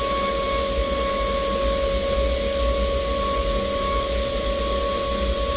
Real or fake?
real